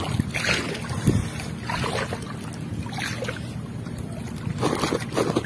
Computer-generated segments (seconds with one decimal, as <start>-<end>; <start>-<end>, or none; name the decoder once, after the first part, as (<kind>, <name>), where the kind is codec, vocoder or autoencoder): none